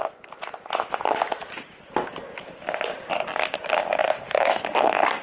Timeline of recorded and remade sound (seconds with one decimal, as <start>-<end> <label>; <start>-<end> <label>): 0.0-4.0 recorded; 4.0-4.5 remade; 4.5-5.2 recorded